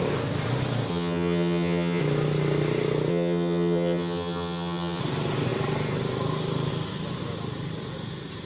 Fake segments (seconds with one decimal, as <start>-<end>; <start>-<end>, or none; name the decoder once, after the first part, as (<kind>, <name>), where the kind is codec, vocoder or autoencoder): 0.9-2.0 (vocoder, HiFi-GAN); 3.1-5.0